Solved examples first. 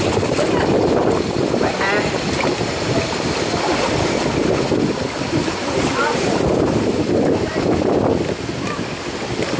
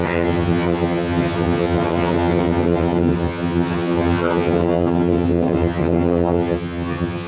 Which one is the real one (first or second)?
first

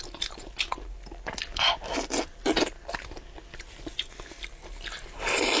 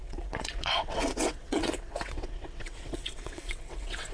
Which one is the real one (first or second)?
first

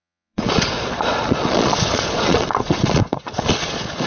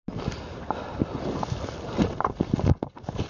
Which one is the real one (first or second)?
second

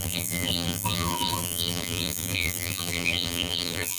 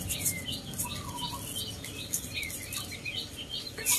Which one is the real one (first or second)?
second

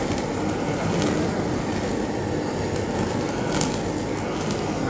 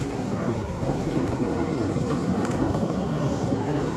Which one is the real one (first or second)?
first